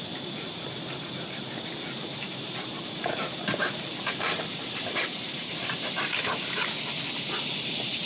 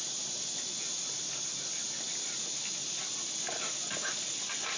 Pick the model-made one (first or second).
first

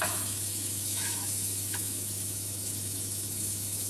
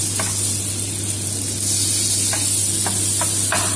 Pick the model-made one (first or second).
first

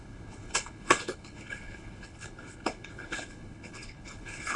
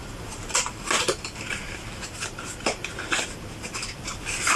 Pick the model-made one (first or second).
first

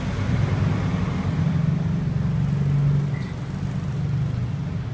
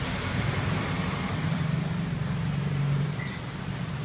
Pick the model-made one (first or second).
second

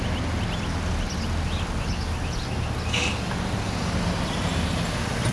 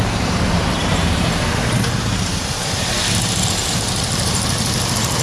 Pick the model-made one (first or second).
second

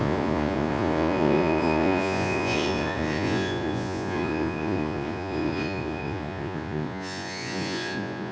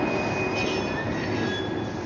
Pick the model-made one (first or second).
first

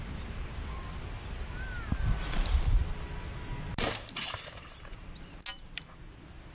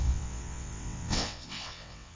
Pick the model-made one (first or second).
second